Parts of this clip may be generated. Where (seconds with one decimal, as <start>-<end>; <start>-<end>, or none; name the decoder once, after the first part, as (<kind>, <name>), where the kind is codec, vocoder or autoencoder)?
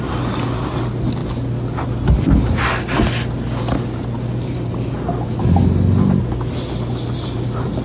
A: none